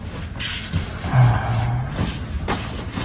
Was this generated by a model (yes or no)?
no